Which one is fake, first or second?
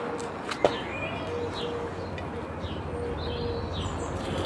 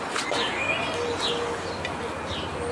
second